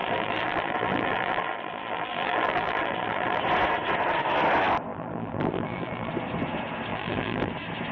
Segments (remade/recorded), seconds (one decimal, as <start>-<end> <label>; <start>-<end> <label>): 0.0-3.4 remade; 3.4-4.9 recorded; 4.9-6.1 remade; 6.1-6.9 recorded; 6.9-7.5 remade; 7.5-7.9 recorded